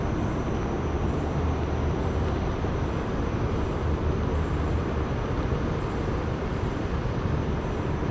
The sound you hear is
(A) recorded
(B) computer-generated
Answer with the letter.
B